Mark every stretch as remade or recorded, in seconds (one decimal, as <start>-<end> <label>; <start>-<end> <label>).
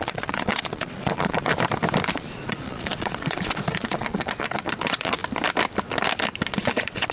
0.0-1.5 remade; 1.5-2.1 recorded; 2.1-5.2 remade; 5.2-6.6 recorded; 6.6-7.1 remade